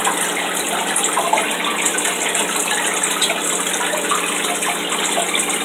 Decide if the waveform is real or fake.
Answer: real